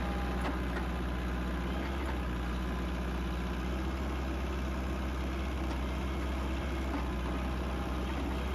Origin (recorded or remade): recorded